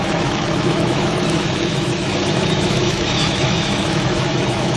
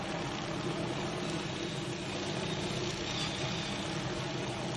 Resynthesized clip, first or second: first